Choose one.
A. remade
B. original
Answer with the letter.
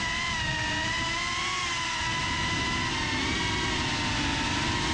B